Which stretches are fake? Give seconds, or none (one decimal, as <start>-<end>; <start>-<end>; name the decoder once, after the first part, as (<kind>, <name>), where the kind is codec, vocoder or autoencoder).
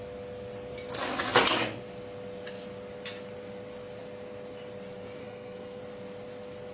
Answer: 5.2-5.8 (codec, SNAC)